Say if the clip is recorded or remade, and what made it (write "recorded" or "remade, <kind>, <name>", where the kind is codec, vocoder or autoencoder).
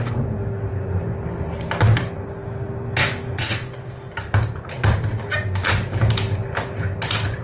recorded